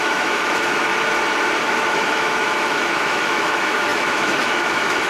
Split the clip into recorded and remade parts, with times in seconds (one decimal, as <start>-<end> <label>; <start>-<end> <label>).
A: 0.0-0.9 remade; 0.9-1.6 recorded; 1.6-5.1 remade